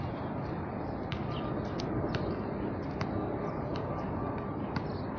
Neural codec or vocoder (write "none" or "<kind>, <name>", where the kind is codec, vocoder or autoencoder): none